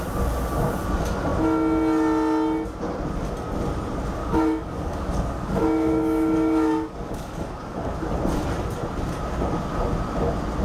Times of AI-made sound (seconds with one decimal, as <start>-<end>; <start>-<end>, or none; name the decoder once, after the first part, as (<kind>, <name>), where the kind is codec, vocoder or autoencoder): 4.2-8.2 (codec, DAC)